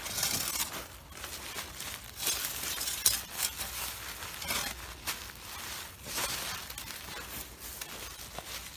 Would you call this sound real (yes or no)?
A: yes